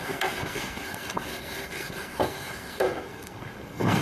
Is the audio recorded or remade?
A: remade